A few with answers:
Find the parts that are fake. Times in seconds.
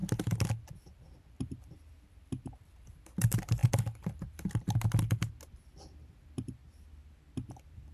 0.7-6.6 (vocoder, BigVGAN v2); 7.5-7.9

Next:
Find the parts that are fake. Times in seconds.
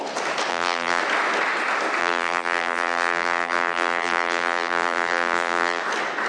0.5-1.0 (vocoder, BigVGAN v2); 2.0-5.8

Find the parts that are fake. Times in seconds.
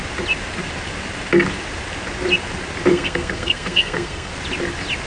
2.9-4.3 (codec, SNAC)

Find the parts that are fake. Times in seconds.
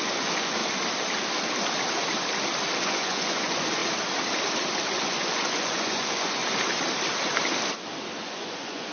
0.0-0.6 (vocoder, Vocos); 2.8-3.8; 5.0-6.4; 8.2-8.9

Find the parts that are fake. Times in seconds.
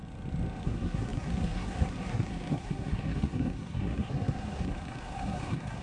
0.6-5.8 (codec, SNAC)